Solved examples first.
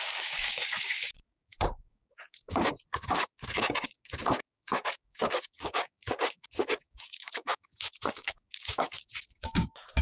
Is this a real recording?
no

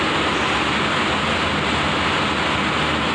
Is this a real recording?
yes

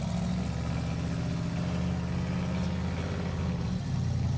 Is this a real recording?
yes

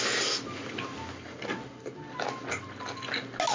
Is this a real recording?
yes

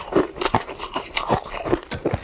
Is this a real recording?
yes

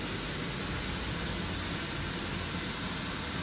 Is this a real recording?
yes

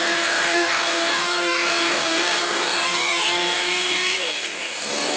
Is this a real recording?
no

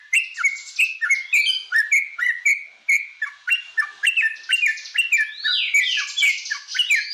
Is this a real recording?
yes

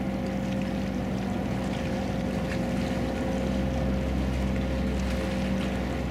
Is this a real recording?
yes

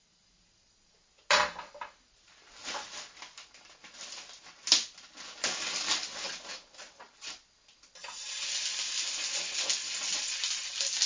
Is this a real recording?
yes